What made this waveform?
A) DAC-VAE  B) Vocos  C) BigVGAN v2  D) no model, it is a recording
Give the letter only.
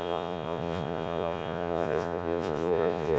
B